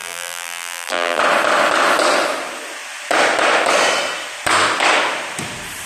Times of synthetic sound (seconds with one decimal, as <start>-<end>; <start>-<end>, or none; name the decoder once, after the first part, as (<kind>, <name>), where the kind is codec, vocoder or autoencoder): 0.0-1.2 (vocoder, BigVGAN v2)